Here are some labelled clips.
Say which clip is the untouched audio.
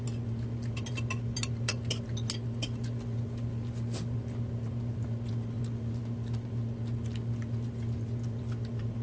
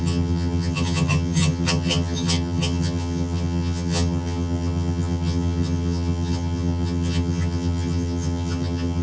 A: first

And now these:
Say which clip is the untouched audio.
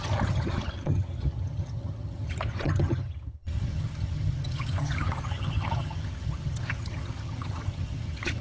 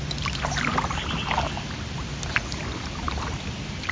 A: second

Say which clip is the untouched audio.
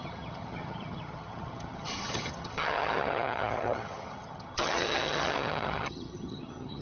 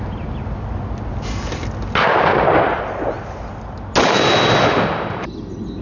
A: second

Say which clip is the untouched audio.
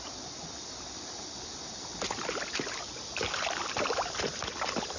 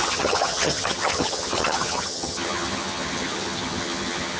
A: first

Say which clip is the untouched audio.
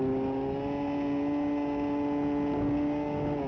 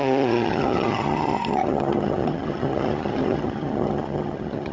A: first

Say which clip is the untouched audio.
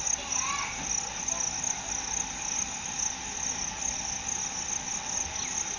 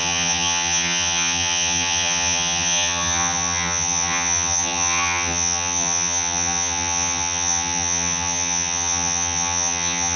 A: first